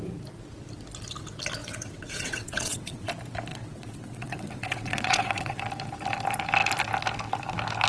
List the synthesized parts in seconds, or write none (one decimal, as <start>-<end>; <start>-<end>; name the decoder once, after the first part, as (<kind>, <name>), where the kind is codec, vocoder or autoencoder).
1.6-3.1 (vocoder, WaveNeXt); 3.5-5.6